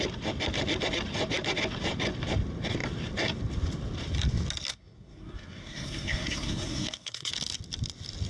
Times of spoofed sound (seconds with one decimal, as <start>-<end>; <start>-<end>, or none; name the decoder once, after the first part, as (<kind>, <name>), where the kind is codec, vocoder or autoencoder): 4.7-7.3 (codec, SNAC)